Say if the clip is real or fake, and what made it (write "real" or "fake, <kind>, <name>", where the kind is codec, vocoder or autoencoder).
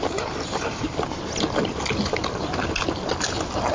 real